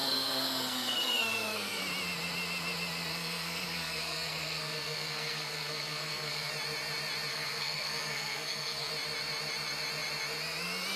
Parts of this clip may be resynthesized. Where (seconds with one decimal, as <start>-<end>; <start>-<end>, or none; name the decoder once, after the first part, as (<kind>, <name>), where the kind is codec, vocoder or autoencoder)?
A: 0.0-1.8 (codec, SNAC); 3.1-6.5; 7.3-8.9